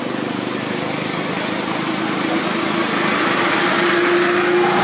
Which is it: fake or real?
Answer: real